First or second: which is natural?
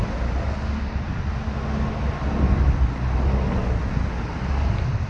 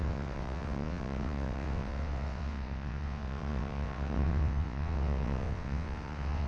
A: first